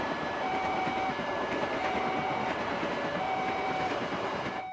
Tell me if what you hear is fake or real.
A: fake